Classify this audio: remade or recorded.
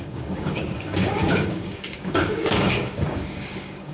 remade